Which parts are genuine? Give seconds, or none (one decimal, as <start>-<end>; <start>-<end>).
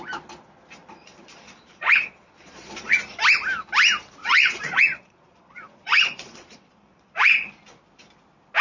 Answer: 0.0-0.8; 2.9-4.2; 7.5-8.6